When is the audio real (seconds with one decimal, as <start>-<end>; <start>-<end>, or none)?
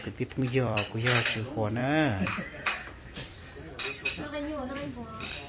none